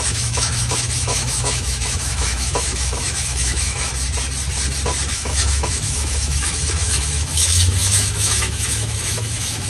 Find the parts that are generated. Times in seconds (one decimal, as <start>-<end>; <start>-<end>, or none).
0.0-3.9; 5.1-9.7